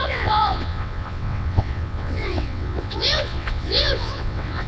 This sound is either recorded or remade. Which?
remade